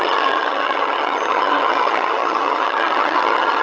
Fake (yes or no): yes